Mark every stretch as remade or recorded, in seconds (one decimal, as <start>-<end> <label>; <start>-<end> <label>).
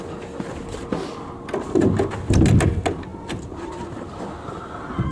0.0-5.1 recorded